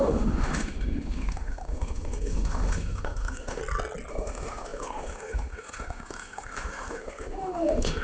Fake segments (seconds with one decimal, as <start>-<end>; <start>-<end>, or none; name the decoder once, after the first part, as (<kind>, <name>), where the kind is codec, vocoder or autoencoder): 0.0-3.6 (autoencoder, DAC-VAE); 4.1-8.0